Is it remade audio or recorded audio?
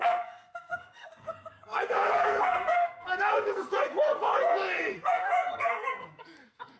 remade